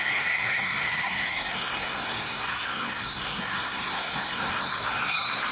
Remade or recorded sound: remade